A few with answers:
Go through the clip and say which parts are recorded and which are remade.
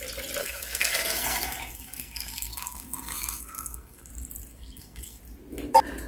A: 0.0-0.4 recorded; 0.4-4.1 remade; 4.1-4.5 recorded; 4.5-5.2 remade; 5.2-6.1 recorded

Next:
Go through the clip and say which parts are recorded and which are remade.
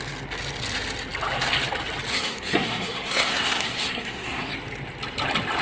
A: 0.0-2.1 recorded; 2.1-4.5 remade; 4.5-5.6 recorded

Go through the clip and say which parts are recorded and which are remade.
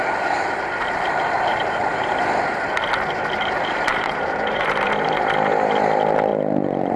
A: 0.0-1.5 recorded; 1.5-2.2 remade; 2.2-3.9 recorded; 3.9-4.9 remade; 4.9-6.3 recorded; 6.3-7.0 remade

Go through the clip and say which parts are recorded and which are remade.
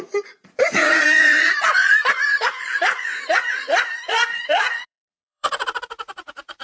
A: 0.0-6.6 remade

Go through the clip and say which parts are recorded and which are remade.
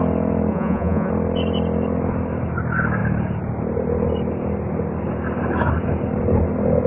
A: 0.0-0.5 recorded; 0.5-1.1 remade; 1.1-6.9 recorded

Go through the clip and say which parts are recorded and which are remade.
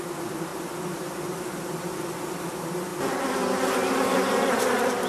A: 0.0-5.1 recorded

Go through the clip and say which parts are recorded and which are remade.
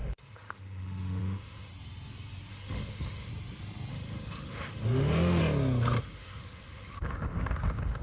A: 0.0-1.7 remade; 1.7-2.5 recorded; 2.5-3.3 remade; 3.3-3.9 recorded; 3.9-5.4 remade; 5.4-6.0 recorded; 6.0-8.0 remade